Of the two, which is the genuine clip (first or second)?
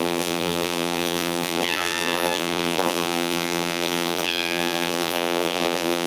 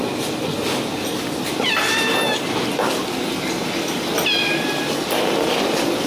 second